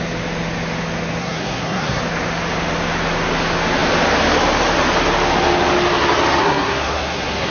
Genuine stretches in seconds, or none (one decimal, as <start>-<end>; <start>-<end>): 0.0-1.2; 2.0-6.4